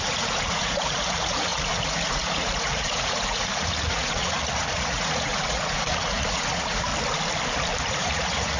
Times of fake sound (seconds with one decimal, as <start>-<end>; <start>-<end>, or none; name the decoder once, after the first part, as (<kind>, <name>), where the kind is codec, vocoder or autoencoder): 0.0-6.9 (vocoder, Vocos); 7.8-8.6